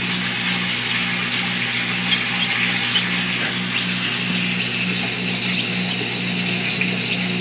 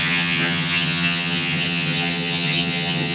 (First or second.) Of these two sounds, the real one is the first